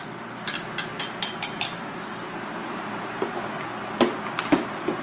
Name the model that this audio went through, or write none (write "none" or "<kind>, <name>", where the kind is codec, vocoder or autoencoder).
none